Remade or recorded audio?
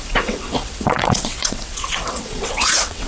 remade